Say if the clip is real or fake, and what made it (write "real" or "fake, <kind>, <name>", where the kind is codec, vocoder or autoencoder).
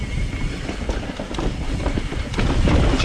real